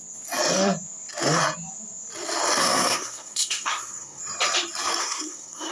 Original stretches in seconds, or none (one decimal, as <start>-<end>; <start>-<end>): 0.0-2.6; 4.2-5.0